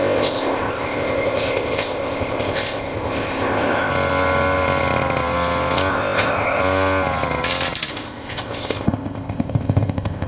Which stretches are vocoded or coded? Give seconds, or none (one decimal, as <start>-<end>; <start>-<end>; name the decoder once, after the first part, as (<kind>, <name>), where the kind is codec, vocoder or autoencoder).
0.0-3.9 (codec, ZipCodec); 5.9-6.6; 7.9-10.3